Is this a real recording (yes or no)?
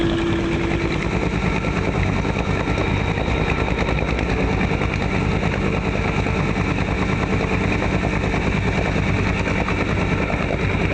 yes